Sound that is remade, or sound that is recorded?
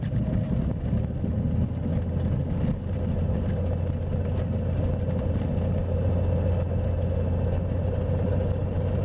recorded